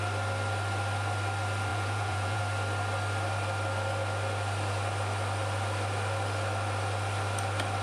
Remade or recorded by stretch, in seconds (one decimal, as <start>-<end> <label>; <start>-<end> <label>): 0.0-1.7 recorded; 1.7-2.4 remade; 2.4-7.8 recorded